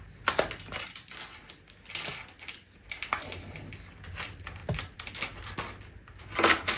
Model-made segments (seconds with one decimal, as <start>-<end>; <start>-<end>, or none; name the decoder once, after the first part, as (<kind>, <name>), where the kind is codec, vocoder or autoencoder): none